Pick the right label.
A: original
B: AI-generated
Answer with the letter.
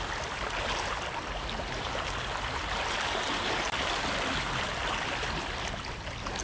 A